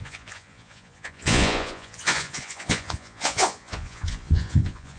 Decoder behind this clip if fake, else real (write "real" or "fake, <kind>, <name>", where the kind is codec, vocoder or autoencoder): fake, vocoder, Vocos